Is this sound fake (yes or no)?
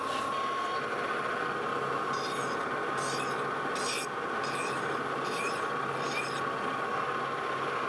no